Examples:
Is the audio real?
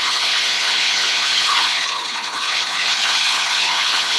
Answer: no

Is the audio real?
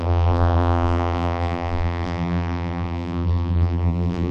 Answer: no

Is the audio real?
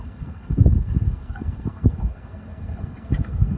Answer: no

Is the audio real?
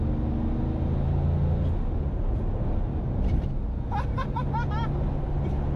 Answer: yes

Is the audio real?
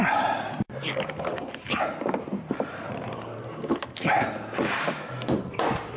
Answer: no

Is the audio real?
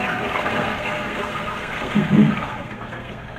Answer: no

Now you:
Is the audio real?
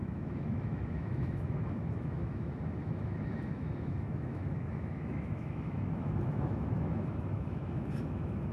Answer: no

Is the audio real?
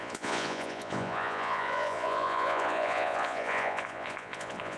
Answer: no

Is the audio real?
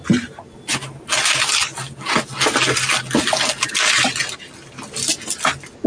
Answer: yes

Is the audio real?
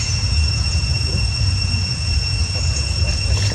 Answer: no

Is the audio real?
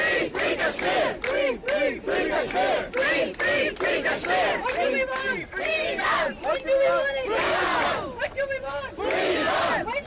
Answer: yes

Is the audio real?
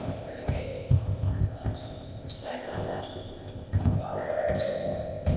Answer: no